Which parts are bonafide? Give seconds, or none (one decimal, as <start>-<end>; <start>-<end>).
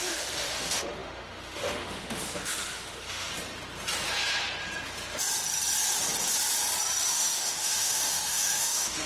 3.3-7.1